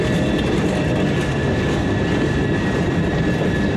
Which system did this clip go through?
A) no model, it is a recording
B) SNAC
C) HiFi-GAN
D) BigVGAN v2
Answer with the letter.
A